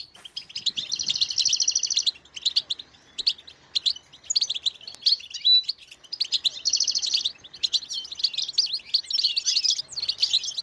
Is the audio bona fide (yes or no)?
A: yes